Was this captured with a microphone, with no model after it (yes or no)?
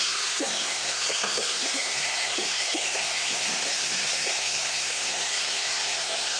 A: no